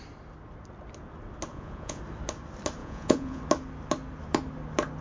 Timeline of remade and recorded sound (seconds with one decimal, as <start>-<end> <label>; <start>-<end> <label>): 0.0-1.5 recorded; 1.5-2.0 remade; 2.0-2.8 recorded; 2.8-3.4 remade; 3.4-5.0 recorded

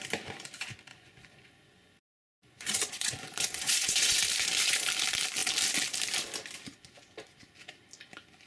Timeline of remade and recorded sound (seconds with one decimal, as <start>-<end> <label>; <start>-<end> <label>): 0.0-0.9 recorded; 0.9-4.2 remade; 4.2-8.5 recorded

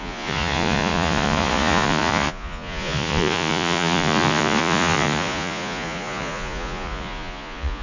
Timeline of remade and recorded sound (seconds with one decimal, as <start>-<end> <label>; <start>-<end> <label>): 0.0-7.8 remade

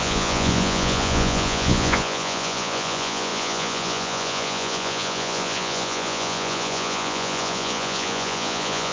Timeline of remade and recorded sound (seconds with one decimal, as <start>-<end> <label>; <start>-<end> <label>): 0.0-8.9 remade

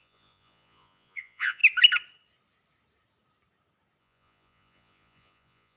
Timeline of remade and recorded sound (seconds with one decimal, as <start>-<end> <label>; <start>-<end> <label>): 0.0-1.6 remade; 1.6-4.0 recorded; 4.0-5.8 remade

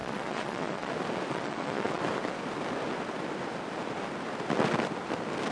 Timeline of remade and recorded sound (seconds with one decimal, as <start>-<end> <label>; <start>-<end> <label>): 0.0-0.9 remade; 0.9-1.3 recorded; 1.3-2.0 remade; 2.0-5.5 recorded

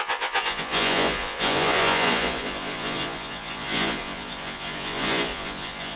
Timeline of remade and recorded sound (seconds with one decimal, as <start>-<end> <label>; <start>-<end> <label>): 0.0-6.0 remade